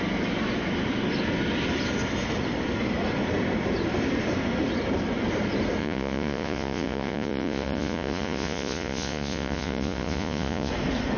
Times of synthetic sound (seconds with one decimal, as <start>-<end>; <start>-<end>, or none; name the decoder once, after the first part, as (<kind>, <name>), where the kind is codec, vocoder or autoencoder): 5.8-10.7 (vocoder, Vocos)